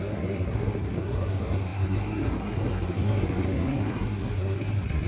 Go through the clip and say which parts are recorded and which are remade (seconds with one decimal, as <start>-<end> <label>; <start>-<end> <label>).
0.0-5.1 remade